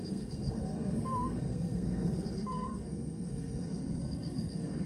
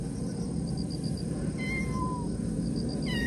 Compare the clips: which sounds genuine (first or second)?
second